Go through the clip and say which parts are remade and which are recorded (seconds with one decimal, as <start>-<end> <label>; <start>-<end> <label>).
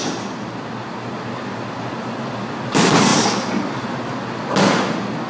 0.0-5.3 recorded